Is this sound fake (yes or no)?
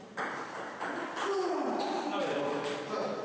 no